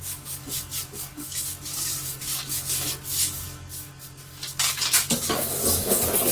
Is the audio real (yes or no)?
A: no